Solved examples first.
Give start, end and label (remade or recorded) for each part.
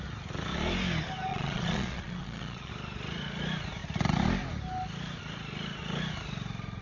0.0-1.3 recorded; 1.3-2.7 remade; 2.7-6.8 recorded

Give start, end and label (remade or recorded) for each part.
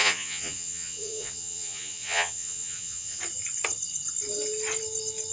0.0-3.2 remade; 3.2-5.3 recorded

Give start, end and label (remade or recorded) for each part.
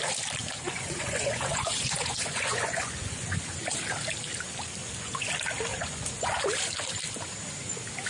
0.0-0.4 recorded; 0.4-3.4 remade; 3.4-4.8 recorded; 4.8-5.3 remade; 5.3-5.7 recorded; 5.7-6.4 remade; 6.4-8.1 recorded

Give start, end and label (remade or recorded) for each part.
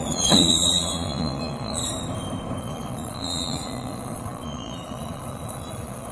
0.0-1.8 remade; 1.8-2.6 recorded; 2.6-6.1 remade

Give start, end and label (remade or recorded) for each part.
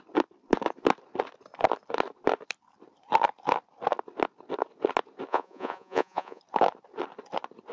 0.0-5.3 recorded; 5.3-6.4 remade; 6.4-7.7 recorded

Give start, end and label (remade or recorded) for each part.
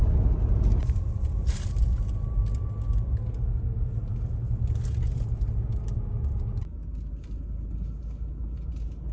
0.0-9.1 recorded